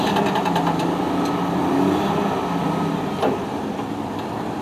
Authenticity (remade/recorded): recorded